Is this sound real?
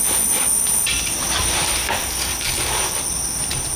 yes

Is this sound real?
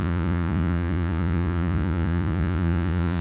no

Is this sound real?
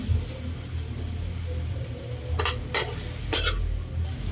yes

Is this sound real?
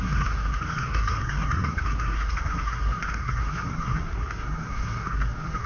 no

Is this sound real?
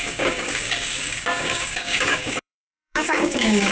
no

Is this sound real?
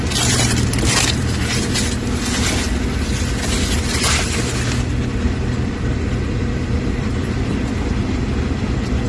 no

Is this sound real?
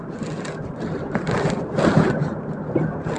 yes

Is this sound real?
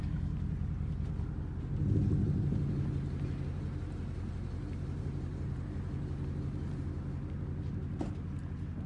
yes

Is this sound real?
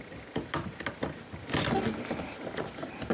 yes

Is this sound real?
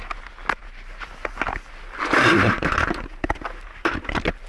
yes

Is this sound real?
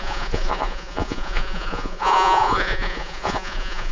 no